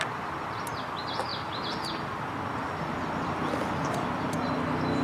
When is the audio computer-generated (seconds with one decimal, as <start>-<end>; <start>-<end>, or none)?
none